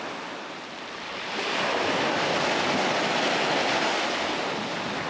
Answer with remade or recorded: recorded